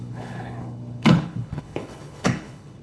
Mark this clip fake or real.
fake